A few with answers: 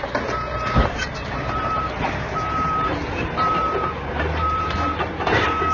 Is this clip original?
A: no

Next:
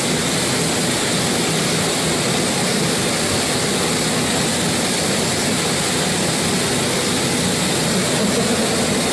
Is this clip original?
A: yes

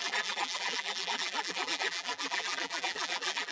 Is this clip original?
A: no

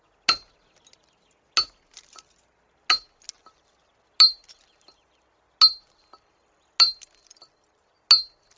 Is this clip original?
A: yes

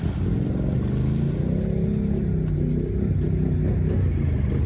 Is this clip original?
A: yes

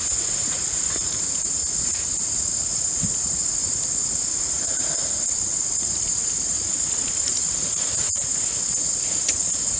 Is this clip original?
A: no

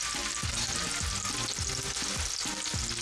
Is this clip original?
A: yes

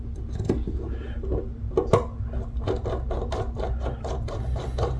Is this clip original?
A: yes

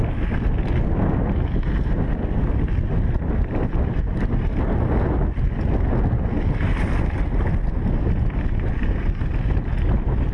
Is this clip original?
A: yes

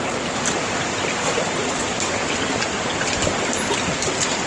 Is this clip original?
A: no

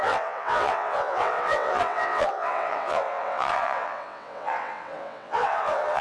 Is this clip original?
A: no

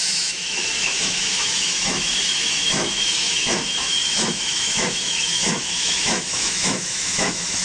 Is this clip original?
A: no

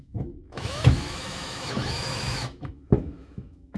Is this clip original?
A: no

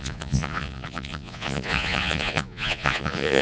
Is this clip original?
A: no